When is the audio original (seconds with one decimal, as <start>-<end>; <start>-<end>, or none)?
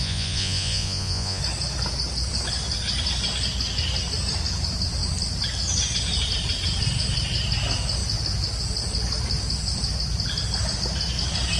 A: 1.4-11.6